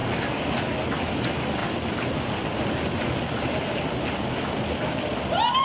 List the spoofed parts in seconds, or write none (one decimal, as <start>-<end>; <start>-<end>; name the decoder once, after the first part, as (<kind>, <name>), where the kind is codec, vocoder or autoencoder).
none